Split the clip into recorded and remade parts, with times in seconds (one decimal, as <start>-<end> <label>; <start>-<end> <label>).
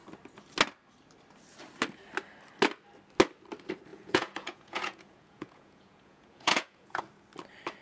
0.0-3.9 recorded; 3.9-7.0 remade; 7.0-7.8 recorded